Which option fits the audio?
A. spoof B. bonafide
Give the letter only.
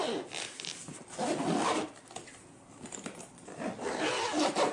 B